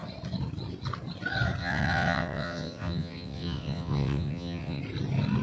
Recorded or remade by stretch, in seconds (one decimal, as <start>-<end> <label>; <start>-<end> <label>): 0.0-1.6 recorded; 1.6-4.8 remade; 4.8-5.4 recorded